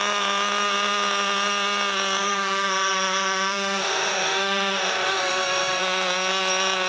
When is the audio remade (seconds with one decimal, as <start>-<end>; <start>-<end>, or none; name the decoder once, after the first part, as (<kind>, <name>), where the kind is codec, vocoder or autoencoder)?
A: 2.2-5.8 (autoencoder, DAC-VAE)